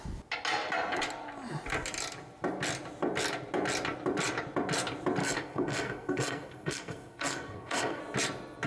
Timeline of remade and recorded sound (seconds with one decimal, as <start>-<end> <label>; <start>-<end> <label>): 0.0-5.2 recorded; 5.2-8.0 remade; 8.0-8.7 recorded